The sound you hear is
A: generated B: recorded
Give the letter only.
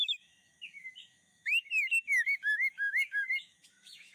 A